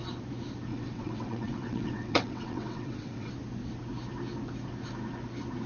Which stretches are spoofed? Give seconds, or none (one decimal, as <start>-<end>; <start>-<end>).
0.7-3.3

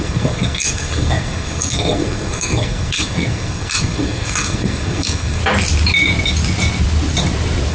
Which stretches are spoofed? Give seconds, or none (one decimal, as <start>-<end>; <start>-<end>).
0.0-5.4

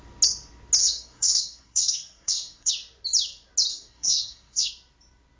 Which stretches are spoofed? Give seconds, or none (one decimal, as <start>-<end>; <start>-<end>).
0.8-2.7; 3.7-4.7

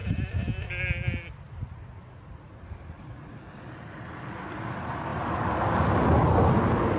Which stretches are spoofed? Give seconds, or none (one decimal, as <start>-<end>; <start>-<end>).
none

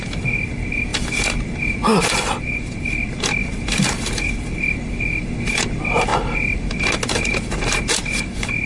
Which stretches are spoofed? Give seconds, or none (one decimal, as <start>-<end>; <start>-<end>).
none

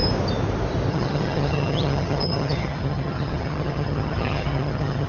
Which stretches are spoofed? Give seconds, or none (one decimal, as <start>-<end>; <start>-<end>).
0.9-5.1

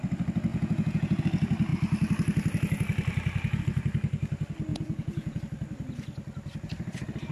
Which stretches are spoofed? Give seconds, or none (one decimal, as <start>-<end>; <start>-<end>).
0.5-1.2; 4.7-5.4

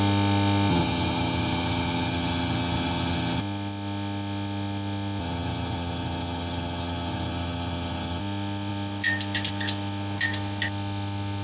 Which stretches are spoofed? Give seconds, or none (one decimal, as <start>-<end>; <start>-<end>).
0.7-3.4; 5.2-8.2